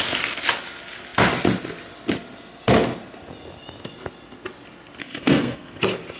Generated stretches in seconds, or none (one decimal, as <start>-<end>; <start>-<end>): 5.0-5.8

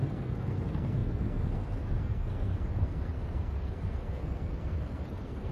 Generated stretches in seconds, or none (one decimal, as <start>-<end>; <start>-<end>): 0.0-5.5

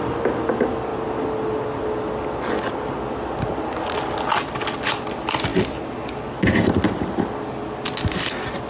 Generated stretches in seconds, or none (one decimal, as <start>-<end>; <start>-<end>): none

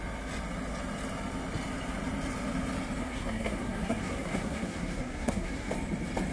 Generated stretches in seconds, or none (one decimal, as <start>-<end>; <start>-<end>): 3.0-5.7